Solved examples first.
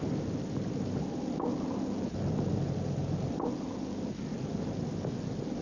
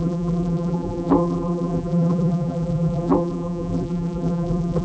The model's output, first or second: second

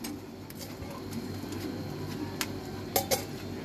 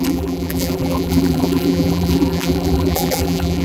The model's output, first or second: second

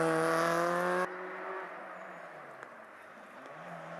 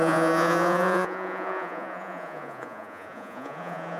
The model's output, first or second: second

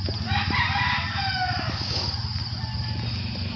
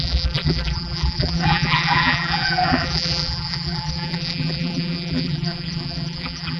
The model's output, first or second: second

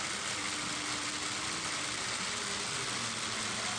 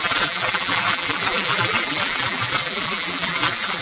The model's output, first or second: second